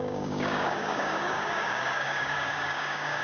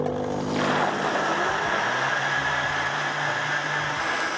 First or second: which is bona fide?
second